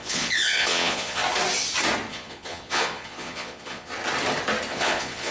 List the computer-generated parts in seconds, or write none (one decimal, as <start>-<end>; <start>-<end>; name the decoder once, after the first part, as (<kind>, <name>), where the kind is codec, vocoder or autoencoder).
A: 0.0-1.2 (vocoder, Vocos); 2.1-3.9; 4.7-5.3

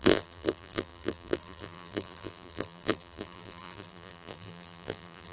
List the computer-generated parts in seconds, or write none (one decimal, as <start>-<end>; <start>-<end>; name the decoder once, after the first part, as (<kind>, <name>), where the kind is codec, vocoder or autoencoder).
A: 0.0-5.3 (vocoder, BigVGAN v2)